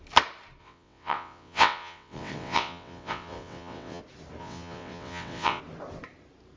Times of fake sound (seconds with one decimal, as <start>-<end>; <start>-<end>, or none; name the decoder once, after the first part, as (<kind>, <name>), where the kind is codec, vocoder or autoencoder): 0.6-4.0 (vocoder, WaveNeXt); 4.4-5.6